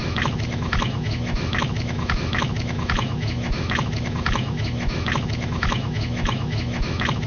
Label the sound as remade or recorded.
remade